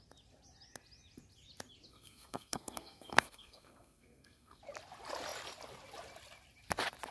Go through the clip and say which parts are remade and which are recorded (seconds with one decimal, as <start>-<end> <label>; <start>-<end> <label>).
0.0-1.9 recorded; 1.9-4.6 remade; 4.6-7.1 recorded